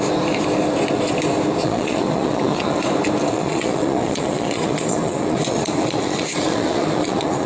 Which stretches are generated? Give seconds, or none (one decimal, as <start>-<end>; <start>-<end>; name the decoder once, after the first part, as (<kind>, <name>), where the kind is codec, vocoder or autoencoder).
1.6-2.8 (vocoder, Vocos); 3.2-7.5